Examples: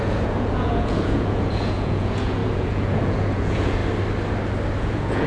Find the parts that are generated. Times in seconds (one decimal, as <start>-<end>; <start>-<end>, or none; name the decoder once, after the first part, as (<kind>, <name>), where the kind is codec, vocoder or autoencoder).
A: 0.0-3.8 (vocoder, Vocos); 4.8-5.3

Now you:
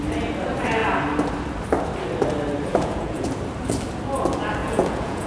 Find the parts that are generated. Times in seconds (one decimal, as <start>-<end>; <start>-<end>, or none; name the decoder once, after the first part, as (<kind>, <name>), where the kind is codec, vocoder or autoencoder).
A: 2.7-3.4 (vocoder, Vocos); 4.6-5.3

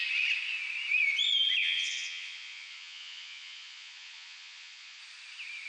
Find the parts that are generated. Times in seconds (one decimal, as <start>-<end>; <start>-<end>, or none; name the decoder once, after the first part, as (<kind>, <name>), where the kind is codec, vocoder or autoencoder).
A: 1.6-5.0 (vocoder, Vocos)

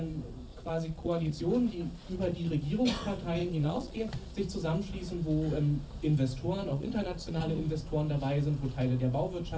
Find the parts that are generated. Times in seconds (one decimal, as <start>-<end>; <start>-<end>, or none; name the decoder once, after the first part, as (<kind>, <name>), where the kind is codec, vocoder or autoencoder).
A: 0.5-1.4 (vocoder, Vocos); 2.0-2.5; 3.4-4.1; 6.7-7.4

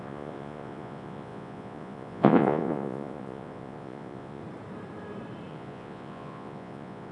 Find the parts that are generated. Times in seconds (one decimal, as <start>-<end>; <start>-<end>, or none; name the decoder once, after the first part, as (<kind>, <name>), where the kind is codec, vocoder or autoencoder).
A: 0.0-4.4 (vocoder, Vocos); 5.5-7.1

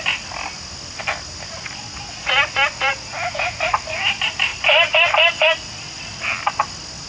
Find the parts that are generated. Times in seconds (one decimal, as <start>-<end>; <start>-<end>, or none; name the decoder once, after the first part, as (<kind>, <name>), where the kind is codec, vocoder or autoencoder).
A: 2.9-3.6 (vocoder, Vocos)

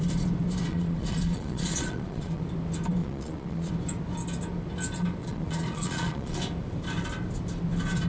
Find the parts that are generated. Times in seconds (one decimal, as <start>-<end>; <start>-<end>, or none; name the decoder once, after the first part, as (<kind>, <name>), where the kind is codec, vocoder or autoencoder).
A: 0.7-2.4 (vocoder, Vocos); 3.0-3.7; 5.2-6.4

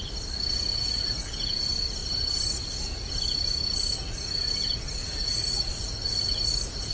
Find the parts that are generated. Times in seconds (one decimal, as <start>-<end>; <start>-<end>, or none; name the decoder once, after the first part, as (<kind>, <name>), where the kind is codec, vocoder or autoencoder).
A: 0.7-1.3 (vocoder, Vocos); 5.0-6.9